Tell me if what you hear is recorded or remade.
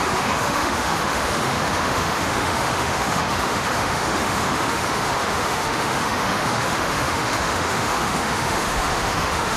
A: remade